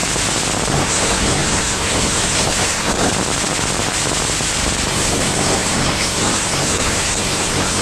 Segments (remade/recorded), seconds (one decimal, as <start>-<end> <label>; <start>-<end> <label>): 0.0-0.7 recorded; 0.7-3.1 remade; 3.1-4.9 recorded; 4.9-7.8 remade